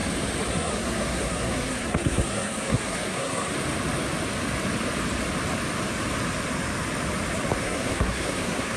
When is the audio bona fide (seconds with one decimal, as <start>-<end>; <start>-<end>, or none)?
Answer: 0.0-0.5; 3.5-7.6